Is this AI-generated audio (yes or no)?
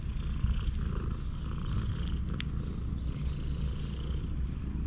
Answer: no